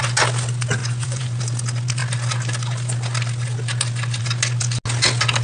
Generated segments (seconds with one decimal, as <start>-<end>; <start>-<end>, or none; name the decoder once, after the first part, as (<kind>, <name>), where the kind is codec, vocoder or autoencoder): 0.8-1.4 (vocoder, Vocos)